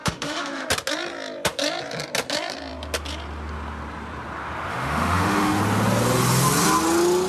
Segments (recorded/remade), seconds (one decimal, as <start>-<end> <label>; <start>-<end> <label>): 0.0-0.7 remade; 0.7-4.7 recorded; 4.7-5.6 remade; 5.6-7.3 recorded